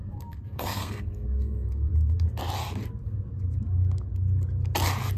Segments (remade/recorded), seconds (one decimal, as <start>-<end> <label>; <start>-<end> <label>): 0.0-1.9 remade; 1.9-5.2 recorded